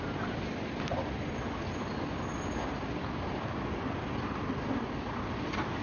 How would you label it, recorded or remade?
recorded